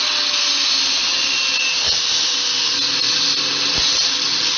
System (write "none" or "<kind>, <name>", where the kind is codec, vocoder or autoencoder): none